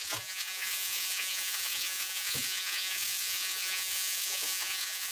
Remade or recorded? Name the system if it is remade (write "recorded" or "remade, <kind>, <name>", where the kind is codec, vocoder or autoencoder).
remade, vocoder, Vocos